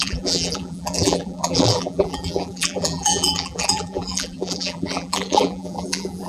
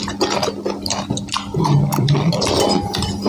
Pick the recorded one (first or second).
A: second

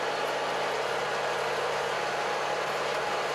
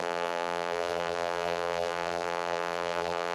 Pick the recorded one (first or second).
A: first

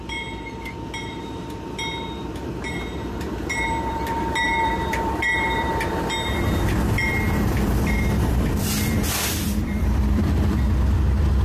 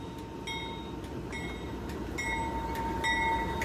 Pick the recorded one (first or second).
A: second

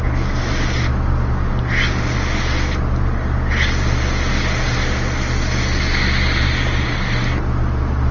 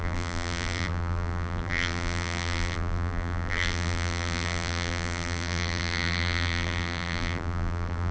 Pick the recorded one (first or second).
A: first